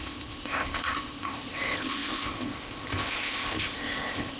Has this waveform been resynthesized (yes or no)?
yes